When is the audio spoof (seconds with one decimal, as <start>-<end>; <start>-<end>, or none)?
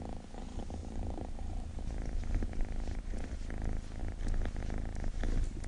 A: 0.8-3.4